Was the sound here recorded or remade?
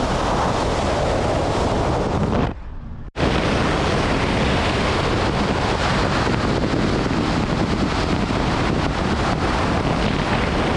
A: recorded